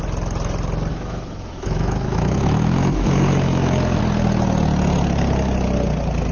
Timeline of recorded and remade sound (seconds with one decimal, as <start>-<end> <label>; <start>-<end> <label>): 0.0-0.9 recorded; 0.9-4.0 remade; 4.0-6.3 recorded